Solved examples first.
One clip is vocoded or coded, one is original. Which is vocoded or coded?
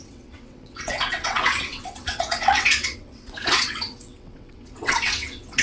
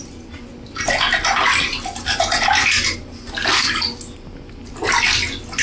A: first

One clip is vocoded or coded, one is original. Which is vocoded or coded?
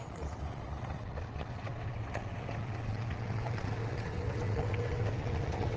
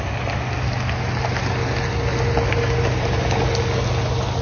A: first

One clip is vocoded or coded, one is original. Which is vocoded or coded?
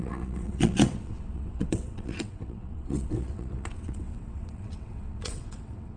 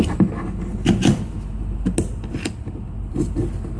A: first